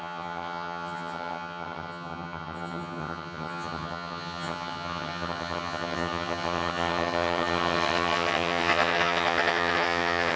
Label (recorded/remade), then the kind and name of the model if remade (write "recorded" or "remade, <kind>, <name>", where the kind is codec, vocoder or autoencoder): remade, vocoder, HiFi-GAN